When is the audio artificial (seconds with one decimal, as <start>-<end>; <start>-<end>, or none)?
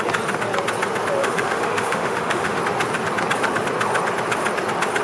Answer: 1.2-2.6